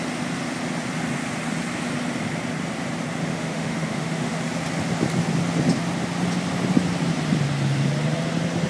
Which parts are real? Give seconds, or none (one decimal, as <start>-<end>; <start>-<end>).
0.0-3.3; 4.4-8.7